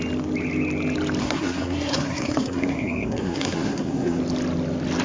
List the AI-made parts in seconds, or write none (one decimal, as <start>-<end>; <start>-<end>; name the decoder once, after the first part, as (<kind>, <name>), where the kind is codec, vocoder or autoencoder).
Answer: 1.2-4.2 (codec, SNAC)